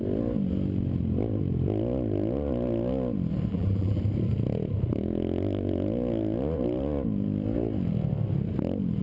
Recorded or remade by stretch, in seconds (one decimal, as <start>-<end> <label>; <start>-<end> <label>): 0.0-3.5 recorded; 3.5-4.0 remade; 4.0-9.0 recorded